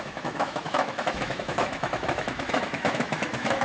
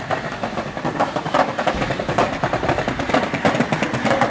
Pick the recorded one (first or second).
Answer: second